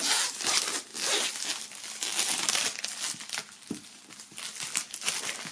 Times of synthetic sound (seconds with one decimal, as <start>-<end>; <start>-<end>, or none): none